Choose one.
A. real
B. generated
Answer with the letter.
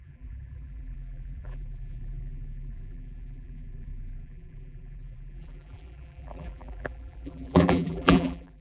B